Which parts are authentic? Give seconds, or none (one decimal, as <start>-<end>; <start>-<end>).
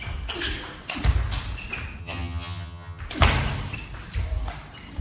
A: 0.0-2.0; 3.0-5.0